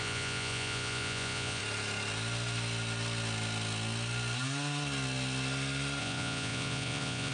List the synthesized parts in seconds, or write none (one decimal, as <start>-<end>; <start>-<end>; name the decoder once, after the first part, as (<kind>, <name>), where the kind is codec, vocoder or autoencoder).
0.0-1.6 (vocoder, Vocos); 6.0-7.3